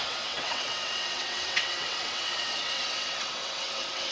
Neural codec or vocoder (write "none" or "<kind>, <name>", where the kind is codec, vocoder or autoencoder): vocoder, WaveNeXt